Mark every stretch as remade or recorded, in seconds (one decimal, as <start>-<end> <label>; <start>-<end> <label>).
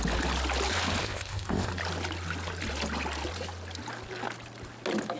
0.0-1.0 recorded; 1.0-1.7 remade; 1.7-5.2 recorded